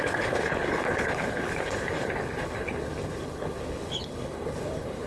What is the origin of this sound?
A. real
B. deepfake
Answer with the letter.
B